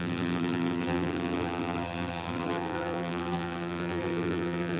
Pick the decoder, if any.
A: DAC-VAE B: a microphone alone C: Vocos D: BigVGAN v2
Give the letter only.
D